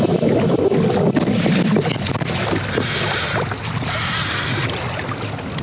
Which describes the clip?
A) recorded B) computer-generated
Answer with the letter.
A